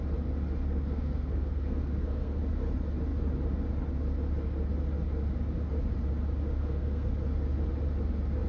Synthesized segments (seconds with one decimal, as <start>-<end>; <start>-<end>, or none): 0.6-2.4; 6.6-7.1